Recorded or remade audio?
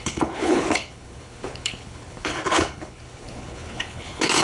remade